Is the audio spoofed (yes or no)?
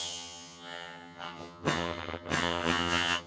yes